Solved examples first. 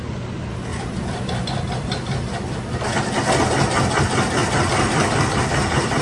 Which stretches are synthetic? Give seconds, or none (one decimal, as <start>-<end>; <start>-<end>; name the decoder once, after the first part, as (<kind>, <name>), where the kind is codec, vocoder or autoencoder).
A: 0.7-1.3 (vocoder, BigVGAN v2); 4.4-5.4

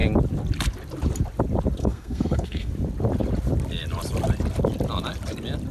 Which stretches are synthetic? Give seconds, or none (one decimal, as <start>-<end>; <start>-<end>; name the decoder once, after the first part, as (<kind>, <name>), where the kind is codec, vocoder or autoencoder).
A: 1.8-2.7 (codec, SNAC)

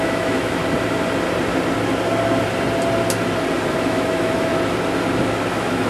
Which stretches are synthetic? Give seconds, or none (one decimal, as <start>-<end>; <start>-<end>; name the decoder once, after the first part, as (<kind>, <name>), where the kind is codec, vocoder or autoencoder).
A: 0.0-0.6 (autoencoder, DAC-VAE); 3.7-4.5; 5.5-5.9

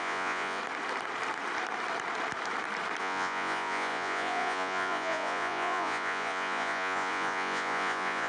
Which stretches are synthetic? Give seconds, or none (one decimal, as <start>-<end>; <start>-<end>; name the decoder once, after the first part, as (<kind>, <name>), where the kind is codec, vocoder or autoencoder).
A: 0.0-0.6 (vocoder, Vocos); 3.0-8.3

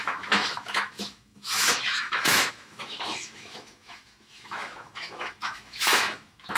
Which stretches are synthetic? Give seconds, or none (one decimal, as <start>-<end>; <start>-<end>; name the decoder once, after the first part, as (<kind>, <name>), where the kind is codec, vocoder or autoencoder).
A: 0.0-6.6 (autoencoder, DAC-VAE)

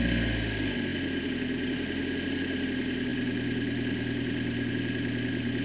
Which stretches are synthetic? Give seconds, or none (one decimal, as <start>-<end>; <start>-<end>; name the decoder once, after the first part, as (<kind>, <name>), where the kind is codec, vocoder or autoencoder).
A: none